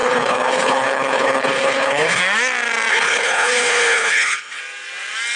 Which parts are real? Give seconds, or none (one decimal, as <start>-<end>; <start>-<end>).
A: 2.2-2.9; 4.6-5.4